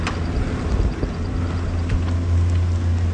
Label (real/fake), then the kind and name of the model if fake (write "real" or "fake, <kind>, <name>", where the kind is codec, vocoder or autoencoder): real